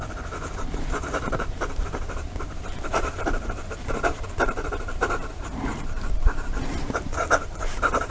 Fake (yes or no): yes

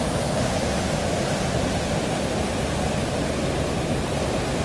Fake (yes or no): no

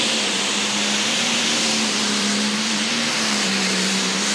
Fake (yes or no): yes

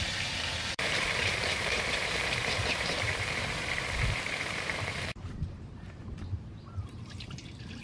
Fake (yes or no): yes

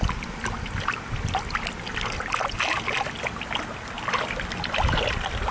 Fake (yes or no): no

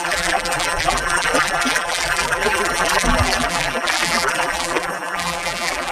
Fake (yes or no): yes